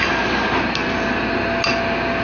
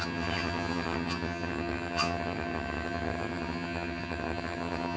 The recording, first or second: first